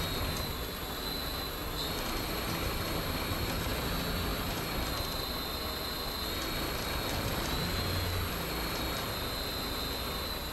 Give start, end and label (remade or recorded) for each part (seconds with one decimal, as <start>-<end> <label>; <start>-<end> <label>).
0.0-10.5 recorded